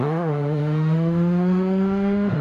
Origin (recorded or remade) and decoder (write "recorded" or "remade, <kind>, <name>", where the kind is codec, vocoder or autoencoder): remade, autoencoder, DAC-VAE